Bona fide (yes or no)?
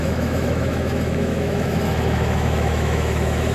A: no